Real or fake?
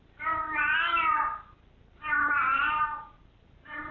real